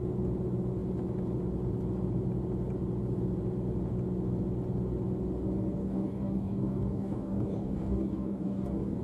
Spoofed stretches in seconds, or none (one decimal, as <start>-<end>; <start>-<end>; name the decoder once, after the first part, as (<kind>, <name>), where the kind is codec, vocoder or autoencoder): 5.8-9.0 (codec, DAC)